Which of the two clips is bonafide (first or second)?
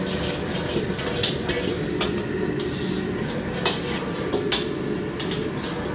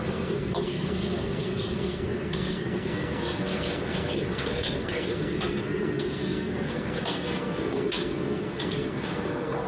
first